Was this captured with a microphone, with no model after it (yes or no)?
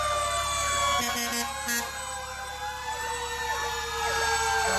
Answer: yes